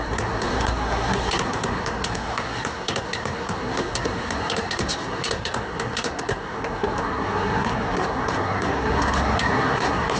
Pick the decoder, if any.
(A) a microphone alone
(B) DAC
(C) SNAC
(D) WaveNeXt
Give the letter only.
C